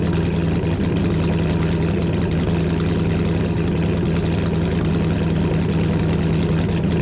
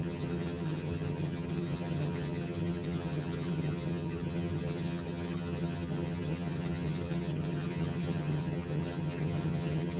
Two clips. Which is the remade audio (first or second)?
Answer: second